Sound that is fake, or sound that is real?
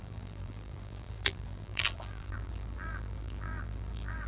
fake